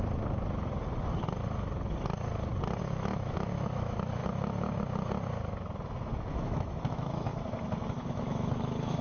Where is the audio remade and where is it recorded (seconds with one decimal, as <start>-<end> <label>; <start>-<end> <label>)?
0.0-2.8 recorded; 2.8-4.2 remade; 4.2-6.3 recorded; 6.3-7.3 remade; 7.3-7.9 recorded; 7.9-9.0 remade